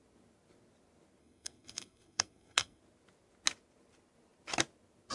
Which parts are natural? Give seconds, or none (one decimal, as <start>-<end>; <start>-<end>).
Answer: 0.0-1.2; 2.8-5.1